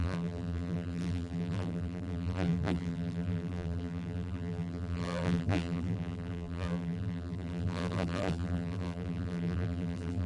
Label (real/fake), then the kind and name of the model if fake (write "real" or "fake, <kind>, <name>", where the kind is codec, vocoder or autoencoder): fake, vocoder, BigVGAN v2